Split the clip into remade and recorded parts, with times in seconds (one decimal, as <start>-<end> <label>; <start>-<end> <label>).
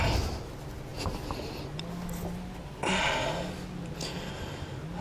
0.0-5.0 recorded